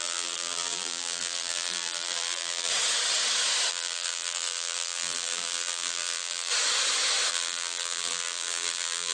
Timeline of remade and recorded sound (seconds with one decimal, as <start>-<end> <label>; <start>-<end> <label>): 0.0-2.7 remade; 2.7-3.7 recorded; 3.7-6.5 remade; 6.5-7.3 recorded; 7.3-9.1 remade